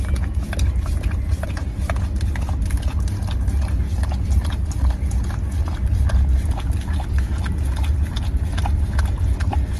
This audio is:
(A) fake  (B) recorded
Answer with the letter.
B